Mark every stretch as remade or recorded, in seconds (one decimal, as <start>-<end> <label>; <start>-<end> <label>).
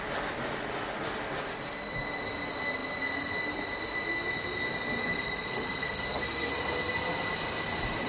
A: 0.0-5.0 recorded; 5.0-6.5 remade; 6.5-8.1 recorded